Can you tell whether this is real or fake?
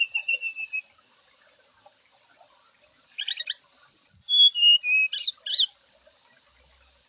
real